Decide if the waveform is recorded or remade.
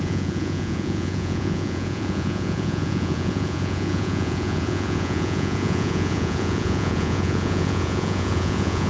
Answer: remade